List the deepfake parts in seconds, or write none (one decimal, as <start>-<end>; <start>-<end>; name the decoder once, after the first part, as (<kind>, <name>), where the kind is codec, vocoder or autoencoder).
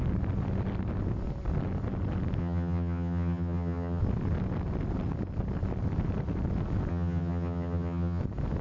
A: 2.4-4.0 (vocoder, HiFi-GAN); 6.9-8.2